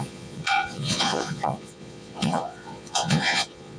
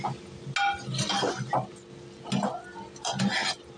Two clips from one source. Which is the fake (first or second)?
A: first